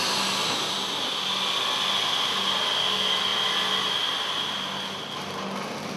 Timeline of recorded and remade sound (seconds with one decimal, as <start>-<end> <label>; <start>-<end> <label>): 0.0-6.0 recorded